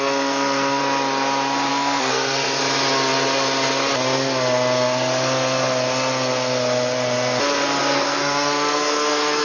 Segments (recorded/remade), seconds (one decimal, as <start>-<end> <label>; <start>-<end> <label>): 0.0-0.8 remade; 0.8-1.7 recorded; 1.7-2.6 remade; 2.6-7.8 recorded; 7.8-9.4 remade